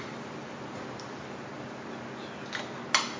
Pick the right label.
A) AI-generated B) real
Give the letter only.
B